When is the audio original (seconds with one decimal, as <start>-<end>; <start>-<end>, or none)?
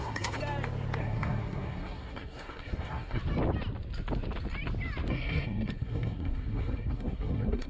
0.4-1.0; 3.2-5.1